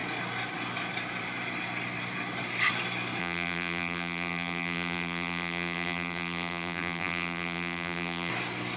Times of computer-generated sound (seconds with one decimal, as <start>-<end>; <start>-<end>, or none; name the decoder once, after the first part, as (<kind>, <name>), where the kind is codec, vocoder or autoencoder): 3.2-8.3 (vocoder, BigVGAN v2)